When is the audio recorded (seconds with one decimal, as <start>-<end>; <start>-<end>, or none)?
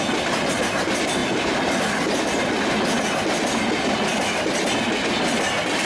0.0-5.9